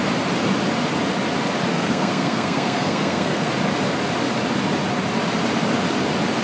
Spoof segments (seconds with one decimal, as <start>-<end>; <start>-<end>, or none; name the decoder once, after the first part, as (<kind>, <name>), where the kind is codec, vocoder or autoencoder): 1.7-3.5 (codec, SNAC)